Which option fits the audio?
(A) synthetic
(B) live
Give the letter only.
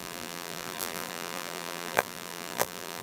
A